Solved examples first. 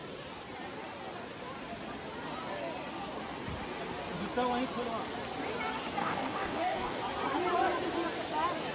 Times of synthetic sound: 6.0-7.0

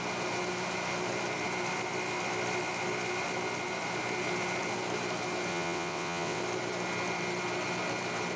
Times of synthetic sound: 5.5-6.4

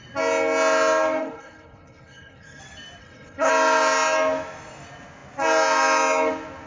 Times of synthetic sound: 1.2-2.6; 3.0-3.5

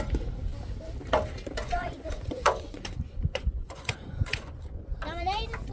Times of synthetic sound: 1.6-5.0

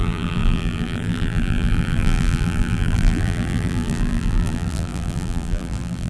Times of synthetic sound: 0.0-6.1

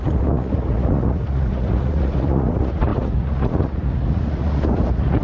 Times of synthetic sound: 0.0-5.2

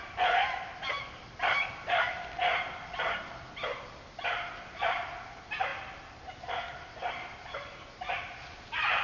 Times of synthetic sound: none